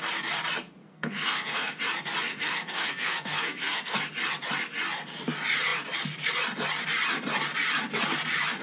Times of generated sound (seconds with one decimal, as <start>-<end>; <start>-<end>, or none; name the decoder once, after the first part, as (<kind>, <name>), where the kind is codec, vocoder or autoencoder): 0.8-1.8 (codec, SNAC); 2.3-4.0